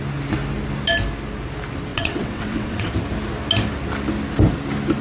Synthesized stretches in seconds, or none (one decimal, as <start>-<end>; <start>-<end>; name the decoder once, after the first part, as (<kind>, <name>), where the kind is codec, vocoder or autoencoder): 1.9-2.9 (vocoder, WaveNeXt)